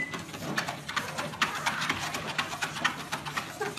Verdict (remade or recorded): recorded